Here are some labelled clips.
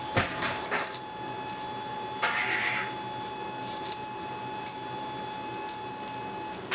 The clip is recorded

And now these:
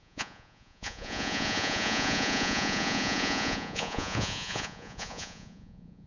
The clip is remade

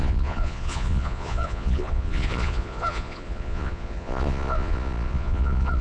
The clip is remade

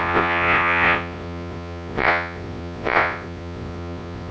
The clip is remade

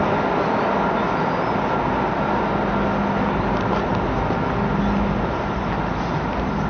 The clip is recorded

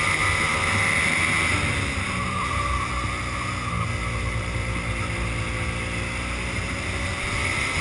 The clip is recorded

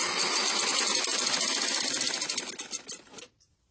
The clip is recorded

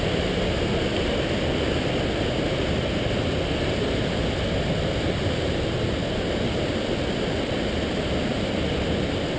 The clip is recorded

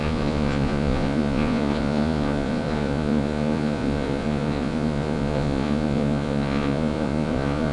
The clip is remade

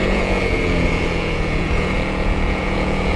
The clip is remade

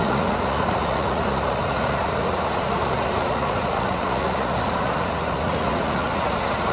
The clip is remade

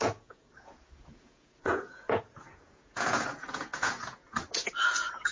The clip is remade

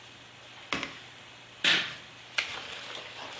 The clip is recorded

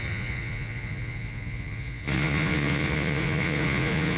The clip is remade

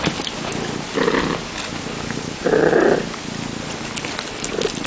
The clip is recorded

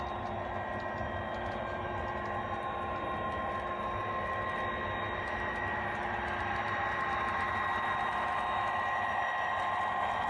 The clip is recorded